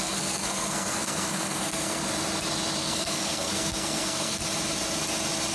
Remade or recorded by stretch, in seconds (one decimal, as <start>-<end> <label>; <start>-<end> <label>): 0.0-2.0 remade; 2.0-2.8 recorded; 2.8-4.4 remade; 4.4-5.5 recorded